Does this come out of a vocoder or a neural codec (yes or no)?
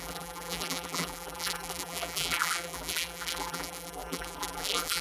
yes